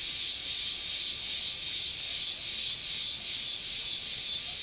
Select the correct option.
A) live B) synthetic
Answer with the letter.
A